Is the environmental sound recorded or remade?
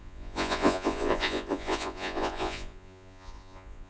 remade